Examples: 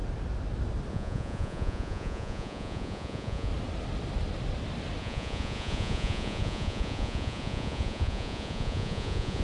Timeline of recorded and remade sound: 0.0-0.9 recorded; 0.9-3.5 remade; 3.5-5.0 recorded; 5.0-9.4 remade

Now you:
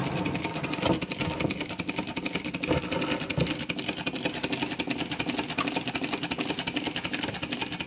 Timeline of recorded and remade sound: 0.0-7.9 recorded

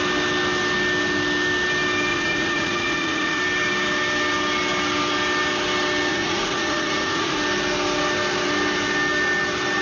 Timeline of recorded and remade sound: 0.0-2.1 recorded; 2.1-3.4 remade; 3.4-6.1 recorded; 6.1-7.4 remade; 7.4-9.8 recorded

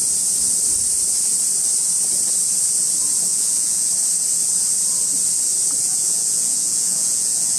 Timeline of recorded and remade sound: 0.0-3.3 recorded; 3.3-3.9 remade; 3.9-5.8 recorded; 5.8-7.6 remade

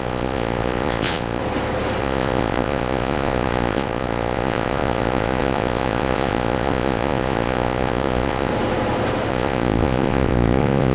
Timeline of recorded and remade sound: 0.0-1.4 remade; 1.4-2.0 recorded; 2.0-8.5 remade; 8.5-9.3 recorded; 9.3-10.9 remade

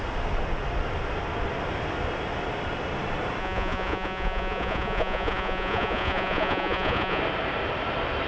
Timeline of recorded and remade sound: 0.0-3.4 recorded; 3.4-7.2 remade; 7.2-8.3 recorded